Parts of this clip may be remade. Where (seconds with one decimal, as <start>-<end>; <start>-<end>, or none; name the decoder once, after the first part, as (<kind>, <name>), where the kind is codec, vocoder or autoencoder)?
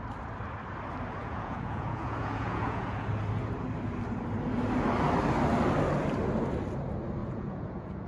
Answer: 1.2-3.1 (vocoder, Vocos); 7.2-8.1